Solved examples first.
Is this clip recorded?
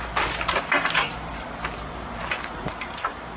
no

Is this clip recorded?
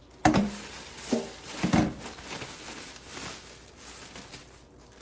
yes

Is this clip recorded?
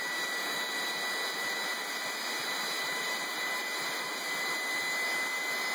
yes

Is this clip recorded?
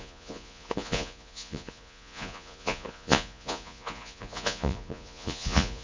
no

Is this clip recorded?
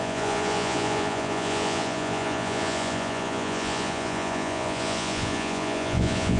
no